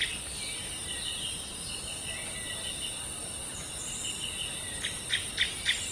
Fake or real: real